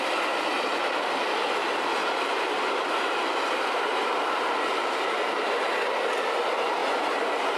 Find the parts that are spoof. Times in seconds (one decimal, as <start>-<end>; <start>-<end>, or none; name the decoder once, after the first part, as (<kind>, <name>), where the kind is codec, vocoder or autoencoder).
2.0-6.0 (vocoder, BigVGAN v2); 6.8-7.6